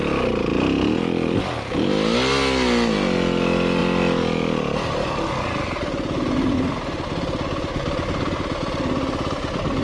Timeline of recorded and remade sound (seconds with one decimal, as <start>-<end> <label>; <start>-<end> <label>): 0.0-9.8 recorded